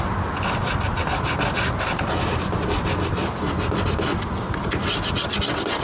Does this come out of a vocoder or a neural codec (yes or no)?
no